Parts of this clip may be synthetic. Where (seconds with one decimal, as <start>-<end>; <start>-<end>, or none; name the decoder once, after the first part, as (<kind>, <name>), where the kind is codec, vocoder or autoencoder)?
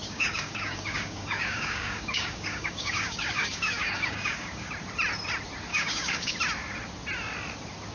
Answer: 0.0-4.7 (codec, DAC); 5.7-6.3